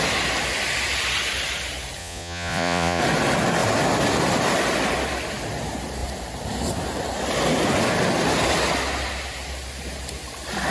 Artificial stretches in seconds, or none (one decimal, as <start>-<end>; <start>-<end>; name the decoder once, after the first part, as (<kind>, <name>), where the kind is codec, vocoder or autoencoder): 2.0-3.0 (vocoder, Vocos)